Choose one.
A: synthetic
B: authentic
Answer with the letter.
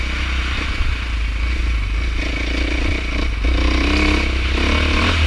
B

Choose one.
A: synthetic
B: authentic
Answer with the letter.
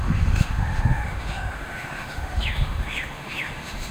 A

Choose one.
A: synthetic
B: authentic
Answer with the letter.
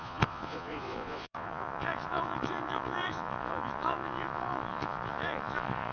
A